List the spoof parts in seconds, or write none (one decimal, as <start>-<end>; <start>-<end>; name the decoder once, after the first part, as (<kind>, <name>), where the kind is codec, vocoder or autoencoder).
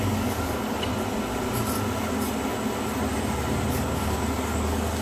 0.0-0.9 (codec, DAC); 3.7-5.0